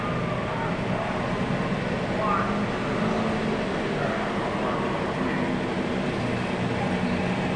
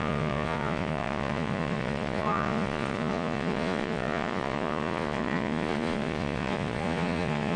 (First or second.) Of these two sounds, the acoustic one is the first